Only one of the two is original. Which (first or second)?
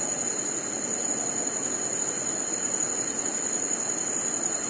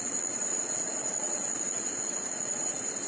first